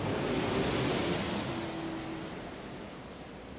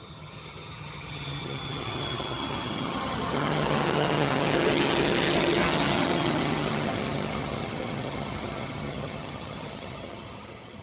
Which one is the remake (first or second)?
second